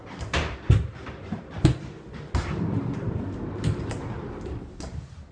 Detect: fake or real real